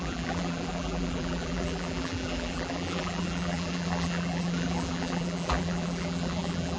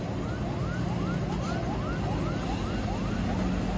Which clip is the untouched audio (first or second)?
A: second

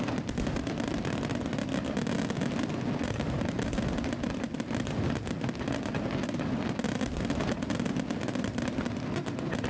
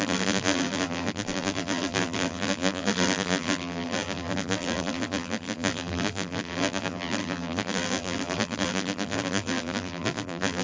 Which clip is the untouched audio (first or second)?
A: first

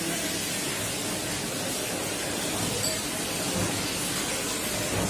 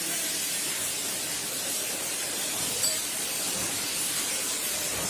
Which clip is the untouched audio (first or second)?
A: first